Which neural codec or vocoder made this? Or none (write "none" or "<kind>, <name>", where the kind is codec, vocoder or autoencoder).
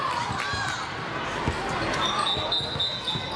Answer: none